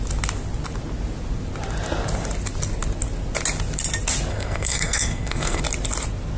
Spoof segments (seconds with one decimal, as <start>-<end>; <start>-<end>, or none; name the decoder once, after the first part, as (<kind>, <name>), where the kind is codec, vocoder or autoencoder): 4.3-5.6 (codec, SNAC)